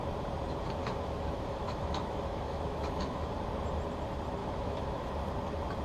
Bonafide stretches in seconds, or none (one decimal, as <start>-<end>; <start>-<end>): 0.0-0.8; 3.3-4.4; 5.1-5.8